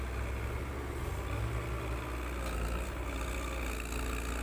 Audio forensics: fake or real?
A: real